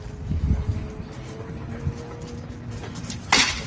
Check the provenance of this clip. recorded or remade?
recorded